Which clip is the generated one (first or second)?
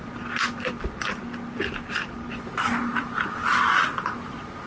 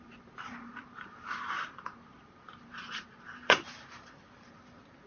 second